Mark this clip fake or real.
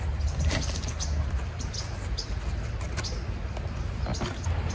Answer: real